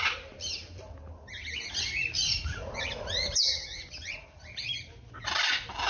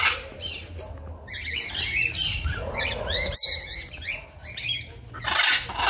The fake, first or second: first